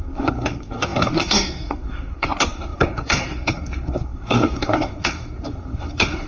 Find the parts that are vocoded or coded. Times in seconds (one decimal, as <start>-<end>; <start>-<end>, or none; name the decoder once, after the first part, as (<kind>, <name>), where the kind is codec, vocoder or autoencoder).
0.0-6.3 (codec, SNAC)

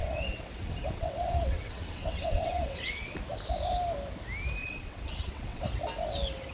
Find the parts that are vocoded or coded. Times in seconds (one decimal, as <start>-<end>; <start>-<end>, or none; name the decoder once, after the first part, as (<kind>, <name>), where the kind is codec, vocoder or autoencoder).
0.0-3.2 (vocoder, WaveNeXt); 4.6-5.6

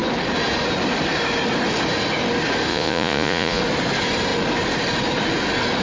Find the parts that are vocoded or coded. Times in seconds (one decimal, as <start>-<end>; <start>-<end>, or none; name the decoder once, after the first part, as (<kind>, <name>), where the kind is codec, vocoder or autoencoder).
2.7-3.6 (vocoder, Vocos)

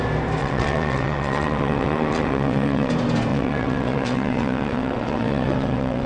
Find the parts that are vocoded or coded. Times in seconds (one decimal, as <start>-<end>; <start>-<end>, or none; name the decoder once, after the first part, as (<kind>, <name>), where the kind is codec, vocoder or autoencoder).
0.4-2.9 (vocoder, WaveNeXt); 3.3-6.1